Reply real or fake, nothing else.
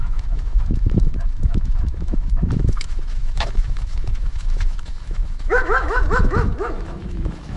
fake